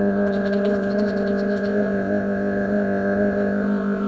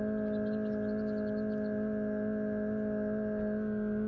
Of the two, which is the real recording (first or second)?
second